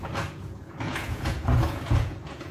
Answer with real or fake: fake